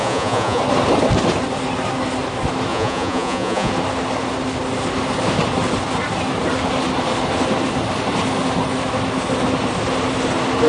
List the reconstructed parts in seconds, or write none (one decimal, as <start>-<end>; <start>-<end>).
0.0-0.6; 2.7-3.7